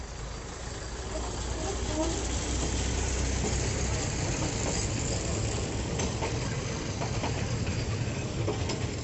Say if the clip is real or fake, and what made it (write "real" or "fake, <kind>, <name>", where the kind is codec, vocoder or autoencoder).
real